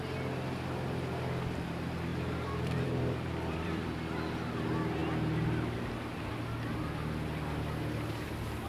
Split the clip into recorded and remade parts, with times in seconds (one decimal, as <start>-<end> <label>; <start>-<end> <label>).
0.0-2.1 recorded; 2.1-3.9 remade; 3.9-8.7 recorded